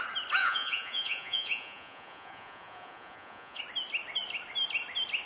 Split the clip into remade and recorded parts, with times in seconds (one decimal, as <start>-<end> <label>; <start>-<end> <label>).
0.0-0.4 recorded; 0.4-3.6 remade; 3.6-5.3 recorded

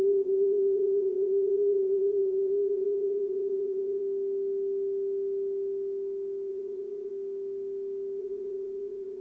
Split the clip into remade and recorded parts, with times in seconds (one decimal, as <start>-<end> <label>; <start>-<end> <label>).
0.0-4.0 remade; 4.0-6.5 recorded; 6.5-7.1 remade; 7.1-8.2 recorded; 8.2-9.2 remade

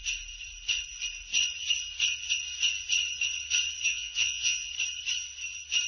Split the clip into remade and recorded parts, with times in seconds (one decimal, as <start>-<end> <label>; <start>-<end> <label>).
0.0-3.9 recorded; 3.9-4.7 remade; 4.7-5.9 recorded

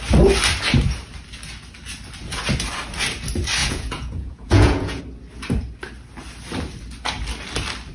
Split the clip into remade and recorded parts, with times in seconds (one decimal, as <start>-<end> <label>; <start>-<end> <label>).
0.0-3.6 recorded; 3.6-5.0 remade; 5.0-7.9 recorded

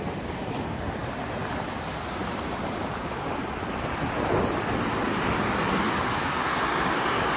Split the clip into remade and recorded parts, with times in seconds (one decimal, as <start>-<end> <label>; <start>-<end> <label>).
0.0-7.4 recorded

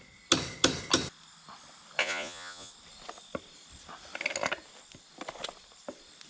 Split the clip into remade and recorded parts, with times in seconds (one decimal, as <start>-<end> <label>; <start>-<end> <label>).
0.0-2.0 recorded; 2.0-2.7 remade; 2.7-6.3 recorded